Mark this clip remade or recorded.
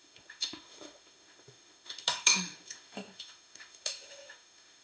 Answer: remade